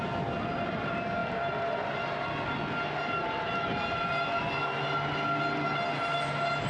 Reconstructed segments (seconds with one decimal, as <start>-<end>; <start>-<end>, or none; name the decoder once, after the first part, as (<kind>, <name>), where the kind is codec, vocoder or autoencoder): none